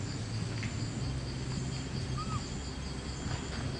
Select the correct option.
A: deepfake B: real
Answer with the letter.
B